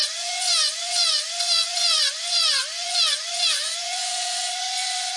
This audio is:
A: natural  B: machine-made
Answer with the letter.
B